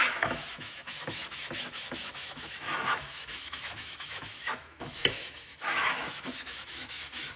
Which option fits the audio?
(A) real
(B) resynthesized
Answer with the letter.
B